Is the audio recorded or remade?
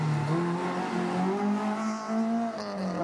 recorded